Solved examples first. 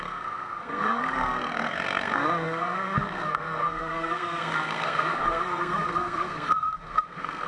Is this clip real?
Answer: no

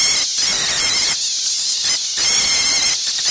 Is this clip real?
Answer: yes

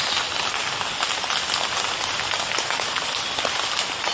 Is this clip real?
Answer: yes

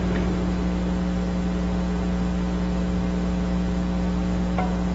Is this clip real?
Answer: yes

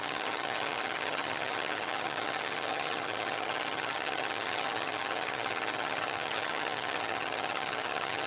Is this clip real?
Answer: no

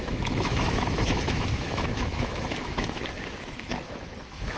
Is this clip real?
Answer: no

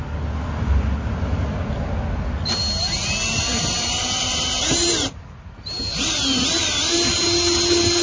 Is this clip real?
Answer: yes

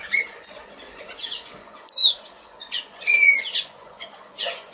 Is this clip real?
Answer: no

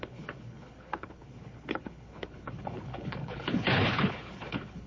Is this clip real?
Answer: no